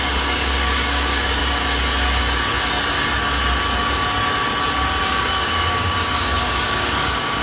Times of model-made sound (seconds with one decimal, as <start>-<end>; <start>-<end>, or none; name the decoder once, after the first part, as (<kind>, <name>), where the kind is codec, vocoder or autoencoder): 0.0-1.4 (codec, DAC); 5.0-7.4